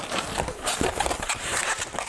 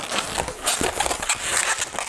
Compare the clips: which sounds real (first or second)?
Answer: second